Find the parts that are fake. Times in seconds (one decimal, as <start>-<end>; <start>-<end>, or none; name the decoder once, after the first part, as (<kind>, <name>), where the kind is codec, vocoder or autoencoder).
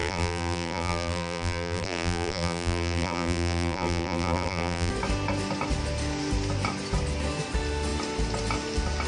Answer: 0.0-4.9 (vocoder, BigVGAN v2)